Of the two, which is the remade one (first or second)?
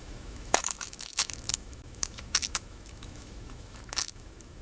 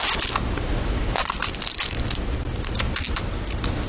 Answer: first